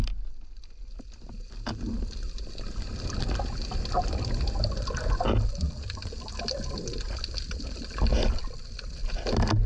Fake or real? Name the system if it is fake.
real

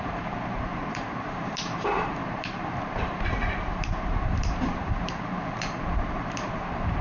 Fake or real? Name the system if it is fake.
fake, vocoder, BigVGAN v2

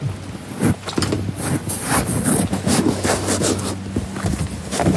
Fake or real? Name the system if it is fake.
real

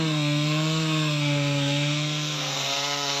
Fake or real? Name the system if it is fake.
fake, codec, SNAC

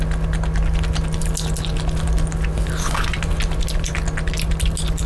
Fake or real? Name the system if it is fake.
real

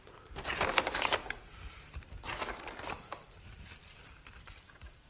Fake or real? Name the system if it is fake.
real